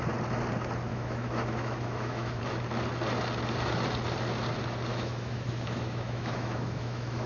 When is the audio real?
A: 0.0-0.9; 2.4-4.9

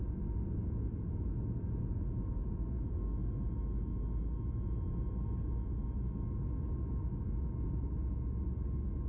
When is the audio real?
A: 0.0-9.1

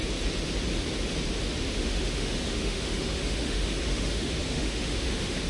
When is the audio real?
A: 0.0-1.7

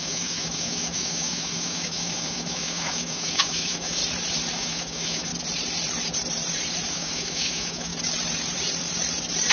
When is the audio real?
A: 4.0-4.5; 5.3-6.9; 7.9-9.5

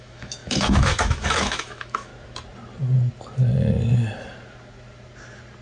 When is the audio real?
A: 2.1-5.6

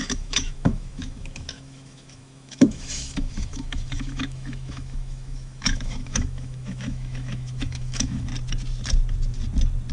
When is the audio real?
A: 8.3-9.9